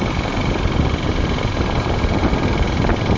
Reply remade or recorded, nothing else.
remade